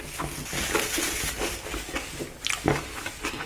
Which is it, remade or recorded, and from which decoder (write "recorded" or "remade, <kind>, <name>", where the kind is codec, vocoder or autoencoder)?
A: recorded